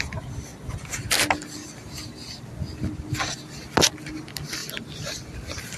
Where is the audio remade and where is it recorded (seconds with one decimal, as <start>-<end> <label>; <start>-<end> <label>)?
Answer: 0.0-5.8 recorded